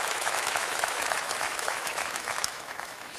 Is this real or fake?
fake